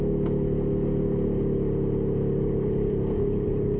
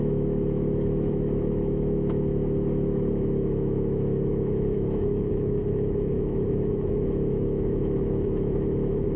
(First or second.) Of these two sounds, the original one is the first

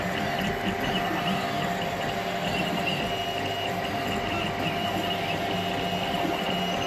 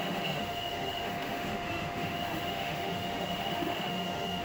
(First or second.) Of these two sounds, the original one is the first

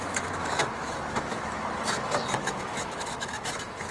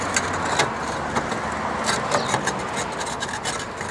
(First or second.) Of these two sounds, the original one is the second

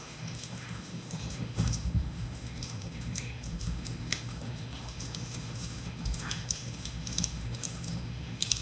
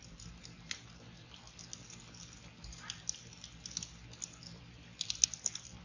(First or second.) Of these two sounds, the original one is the second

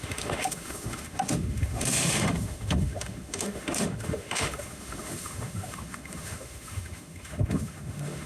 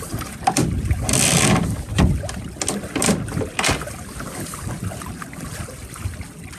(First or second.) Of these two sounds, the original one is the second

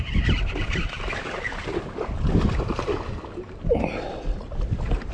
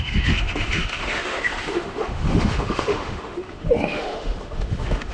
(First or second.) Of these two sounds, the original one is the first